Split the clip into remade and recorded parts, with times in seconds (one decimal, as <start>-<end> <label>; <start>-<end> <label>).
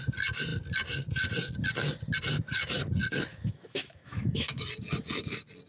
0.0-3.3 recorded; 3.3-4.6 remade; 4.6-5.7 recorded